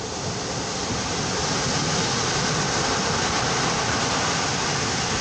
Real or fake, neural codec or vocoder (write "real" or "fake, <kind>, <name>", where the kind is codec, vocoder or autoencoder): real